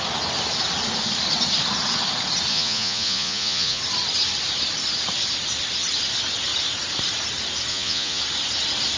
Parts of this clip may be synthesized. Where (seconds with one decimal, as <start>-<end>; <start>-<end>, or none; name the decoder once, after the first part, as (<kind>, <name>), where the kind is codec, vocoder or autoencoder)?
2.5-3.8 (vocoder, Vocos); 7.7-8.2